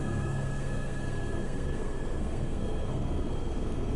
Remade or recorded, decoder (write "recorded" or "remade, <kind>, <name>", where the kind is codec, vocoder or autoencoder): remade, codec, SNAC